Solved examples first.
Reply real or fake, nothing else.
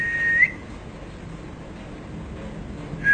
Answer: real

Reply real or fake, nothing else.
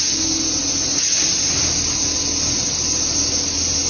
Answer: real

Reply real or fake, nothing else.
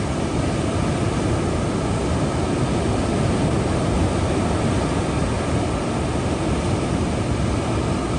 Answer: real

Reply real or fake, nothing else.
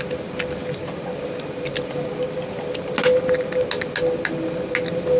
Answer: real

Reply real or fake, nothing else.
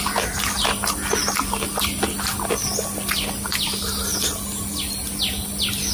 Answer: real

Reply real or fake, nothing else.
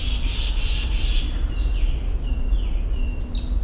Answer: real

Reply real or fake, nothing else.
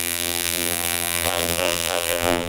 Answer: fake